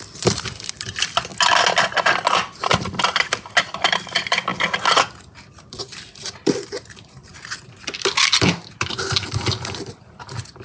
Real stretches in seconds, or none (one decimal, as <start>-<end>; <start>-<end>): 1.3-1.9; 4.5-5.7